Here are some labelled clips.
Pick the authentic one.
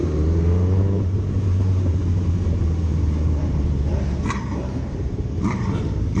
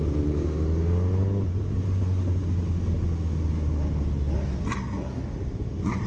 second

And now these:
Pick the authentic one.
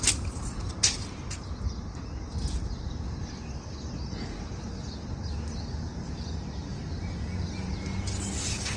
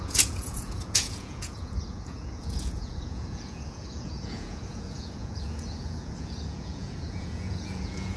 first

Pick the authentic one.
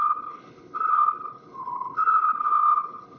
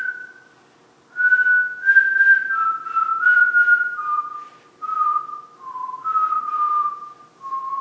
second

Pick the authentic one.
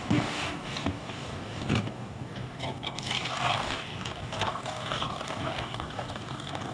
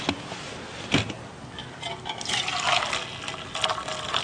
second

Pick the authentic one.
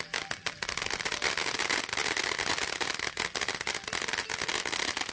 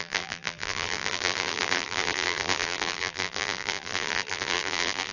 first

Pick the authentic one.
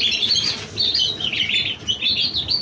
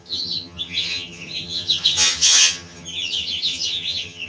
first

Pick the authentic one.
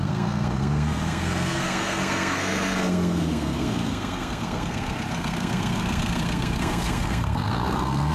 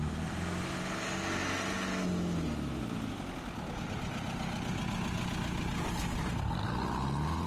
second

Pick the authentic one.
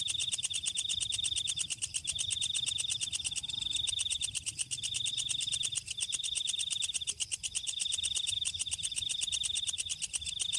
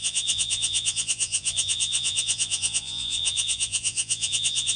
first